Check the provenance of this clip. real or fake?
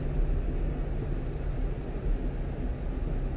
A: real